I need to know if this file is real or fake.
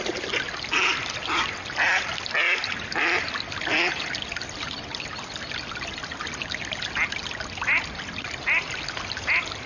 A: real